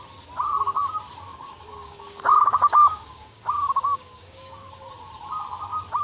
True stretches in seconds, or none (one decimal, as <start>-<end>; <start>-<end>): 0.0-1.3; 4.9-6.0